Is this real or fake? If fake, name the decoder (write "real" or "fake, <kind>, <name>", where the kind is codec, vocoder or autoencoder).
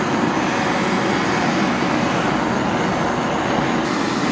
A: real